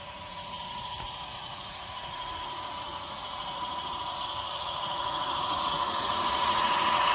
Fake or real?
fake